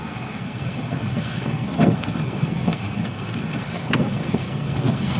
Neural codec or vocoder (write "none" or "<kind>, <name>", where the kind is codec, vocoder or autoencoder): codec, SNAC